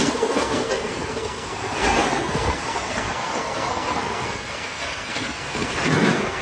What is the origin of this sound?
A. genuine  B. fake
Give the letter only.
B